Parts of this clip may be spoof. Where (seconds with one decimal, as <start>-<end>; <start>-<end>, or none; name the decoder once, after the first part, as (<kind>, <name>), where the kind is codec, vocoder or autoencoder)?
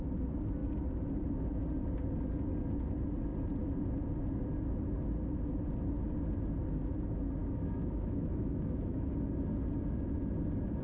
7.4-9.1 (autoencoder, DAC-VAE)